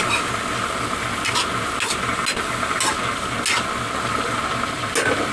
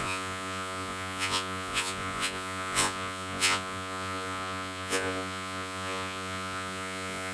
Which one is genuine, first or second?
first